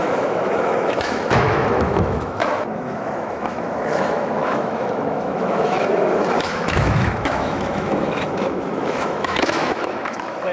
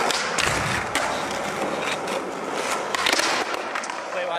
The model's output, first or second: first